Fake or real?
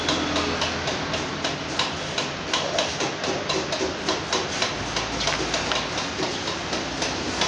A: real